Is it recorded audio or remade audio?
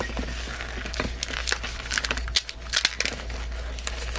recorded